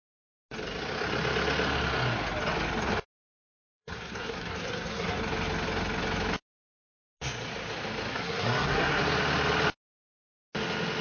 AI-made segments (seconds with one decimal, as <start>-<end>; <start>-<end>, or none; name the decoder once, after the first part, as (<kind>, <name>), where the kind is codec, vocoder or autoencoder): 3.3-5.2 (codec, SNAC); 8.1-9.0